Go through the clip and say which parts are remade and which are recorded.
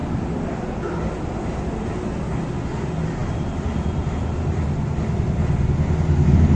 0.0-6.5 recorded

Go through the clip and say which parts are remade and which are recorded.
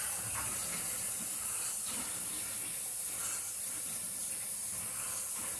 0.0-5.6 recorded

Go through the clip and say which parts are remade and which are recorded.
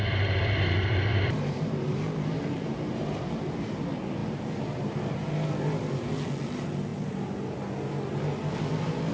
0.0-1.1 recorded; 1.1-3.2 remade; 3.2-4.2 recorded; 4.2-5.3 remade; 5.3-9.1 recorded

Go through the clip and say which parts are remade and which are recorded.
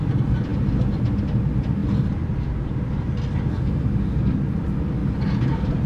0.0-5.0 recorded; 5.0-5.9 remade